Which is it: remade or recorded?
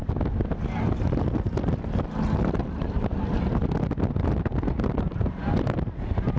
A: recorded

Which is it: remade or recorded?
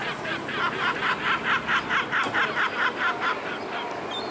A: recorded